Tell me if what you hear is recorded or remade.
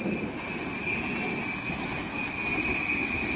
recorded